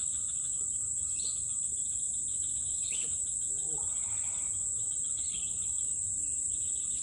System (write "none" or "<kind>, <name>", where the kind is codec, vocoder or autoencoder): none